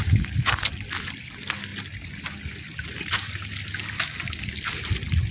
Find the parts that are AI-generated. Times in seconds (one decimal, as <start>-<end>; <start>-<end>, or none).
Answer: 0.0-0.7